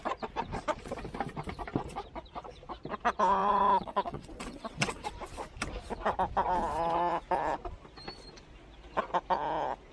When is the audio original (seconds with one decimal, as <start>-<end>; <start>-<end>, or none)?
0.0-3.4; 5.1-9.9